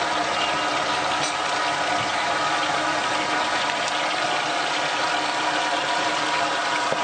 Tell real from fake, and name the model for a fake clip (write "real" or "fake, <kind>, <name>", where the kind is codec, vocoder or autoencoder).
real